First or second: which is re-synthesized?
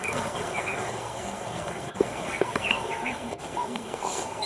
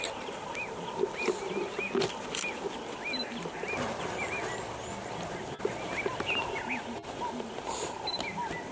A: first